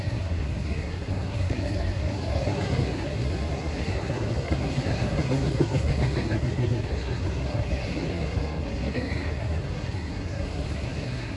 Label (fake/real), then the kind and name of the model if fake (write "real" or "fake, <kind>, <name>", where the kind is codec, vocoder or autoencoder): fake, codec, SNAC